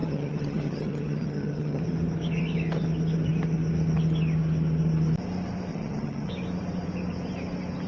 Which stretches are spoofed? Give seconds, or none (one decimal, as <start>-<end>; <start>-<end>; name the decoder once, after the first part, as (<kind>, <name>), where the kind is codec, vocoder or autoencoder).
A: 0.0-1.8 (vocoder, HiFi-GAN); 5.7-6.3